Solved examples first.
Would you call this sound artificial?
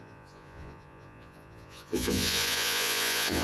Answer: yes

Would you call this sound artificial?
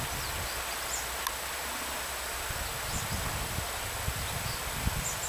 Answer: no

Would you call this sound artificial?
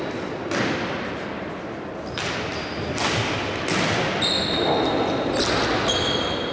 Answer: no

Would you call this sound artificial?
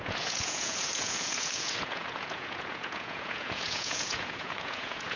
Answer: yes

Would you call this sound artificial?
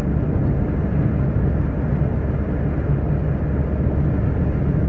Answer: no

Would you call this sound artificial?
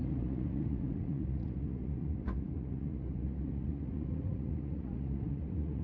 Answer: yes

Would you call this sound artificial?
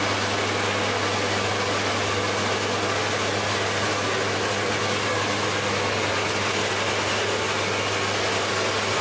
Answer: no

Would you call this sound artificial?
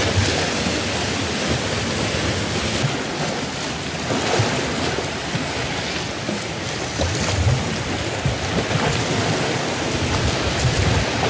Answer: no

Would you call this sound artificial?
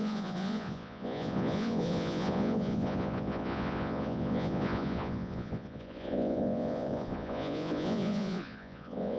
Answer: yes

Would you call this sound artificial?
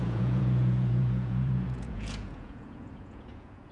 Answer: yes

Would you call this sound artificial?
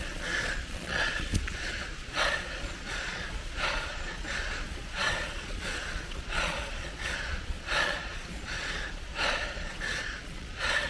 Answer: yes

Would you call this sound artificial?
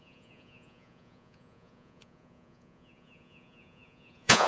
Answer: yes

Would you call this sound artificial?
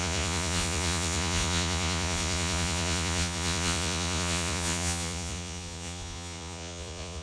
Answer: yes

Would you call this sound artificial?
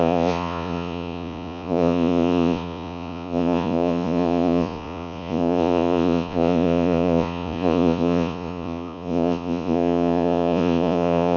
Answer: yes